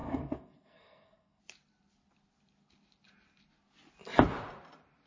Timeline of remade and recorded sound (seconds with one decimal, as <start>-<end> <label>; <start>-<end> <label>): 0.0-1.4 remade; 1.4-5.1 recorded